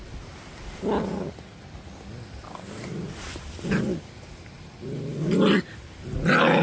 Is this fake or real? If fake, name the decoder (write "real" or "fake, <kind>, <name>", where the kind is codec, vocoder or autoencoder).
real